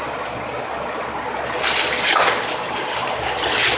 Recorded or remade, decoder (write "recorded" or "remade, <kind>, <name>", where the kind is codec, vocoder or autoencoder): recorded